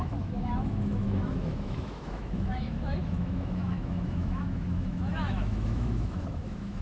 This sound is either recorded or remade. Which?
remade